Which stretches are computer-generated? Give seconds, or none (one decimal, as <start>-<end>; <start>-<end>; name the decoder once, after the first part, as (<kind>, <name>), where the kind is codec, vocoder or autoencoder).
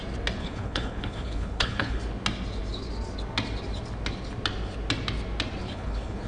0.4-2.0 (codec, HILCodec); 5.6-6.3